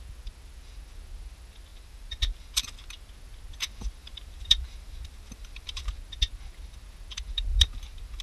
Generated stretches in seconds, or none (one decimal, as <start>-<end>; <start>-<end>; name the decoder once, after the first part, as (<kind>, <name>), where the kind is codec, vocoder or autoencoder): 1.7-3.1 (vocoder, BigVGAN v2); 4.0-5.9; 7.5-8.2